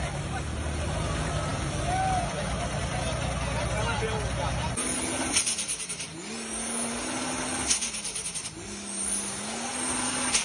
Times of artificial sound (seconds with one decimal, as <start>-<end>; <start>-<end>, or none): none